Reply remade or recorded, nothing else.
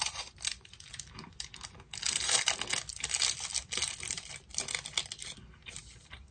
recorded